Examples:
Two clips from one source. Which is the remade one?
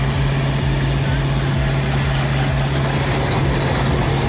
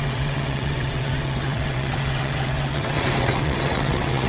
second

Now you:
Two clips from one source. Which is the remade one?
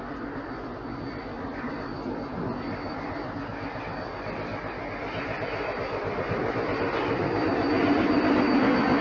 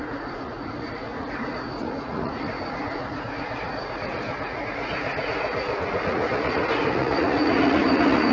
second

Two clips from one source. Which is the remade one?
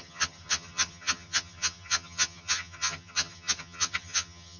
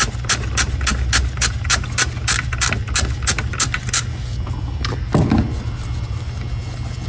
first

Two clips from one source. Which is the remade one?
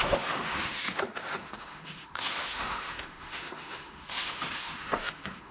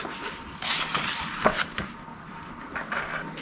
first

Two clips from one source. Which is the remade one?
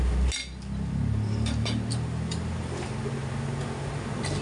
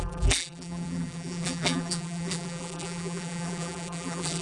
second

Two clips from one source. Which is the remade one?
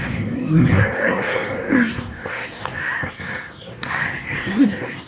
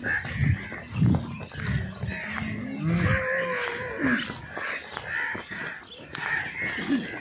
first